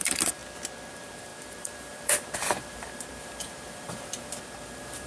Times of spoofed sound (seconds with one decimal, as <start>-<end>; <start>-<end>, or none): 0.0-0.4; 0.9-5.1